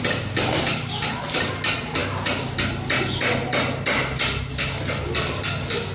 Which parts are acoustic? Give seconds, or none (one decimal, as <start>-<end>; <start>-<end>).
0.0-5.9